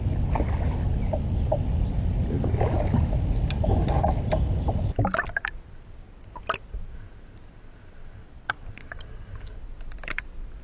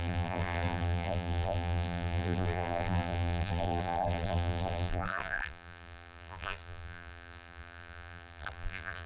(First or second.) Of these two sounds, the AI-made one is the second